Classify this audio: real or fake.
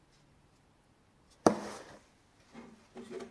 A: real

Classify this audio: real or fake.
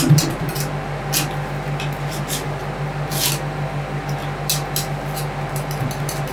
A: real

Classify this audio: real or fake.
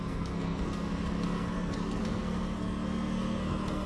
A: fake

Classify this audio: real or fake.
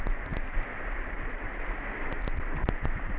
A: real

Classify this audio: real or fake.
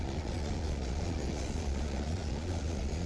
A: fake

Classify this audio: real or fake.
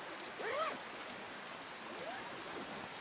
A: real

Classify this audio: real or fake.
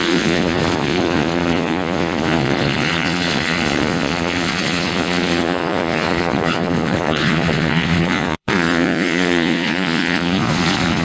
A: fake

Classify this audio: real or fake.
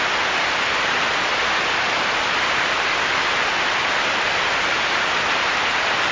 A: real